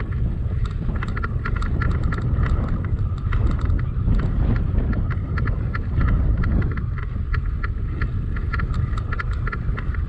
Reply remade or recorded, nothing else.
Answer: recorded